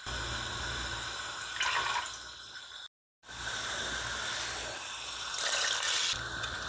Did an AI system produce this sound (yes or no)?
no